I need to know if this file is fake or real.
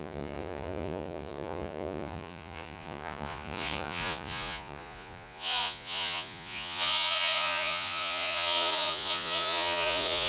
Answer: fake